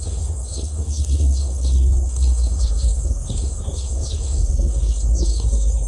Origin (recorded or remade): remade